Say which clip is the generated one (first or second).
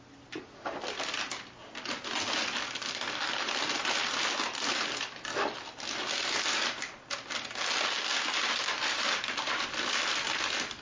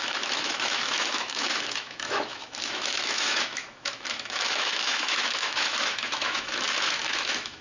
second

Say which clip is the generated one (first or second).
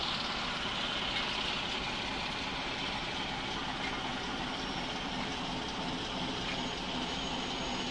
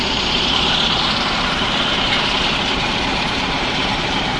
second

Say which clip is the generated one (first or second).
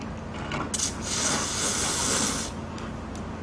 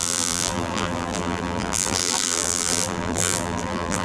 second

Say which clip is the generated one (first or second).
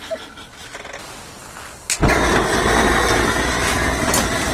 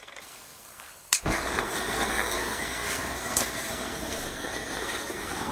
second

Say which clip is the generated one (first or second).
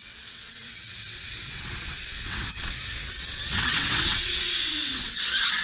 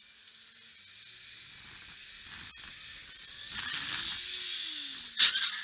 first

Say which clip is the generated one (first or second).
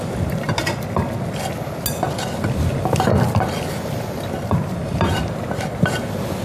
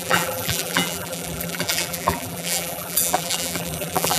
second